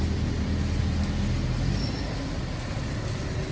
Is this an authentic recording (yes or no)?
yes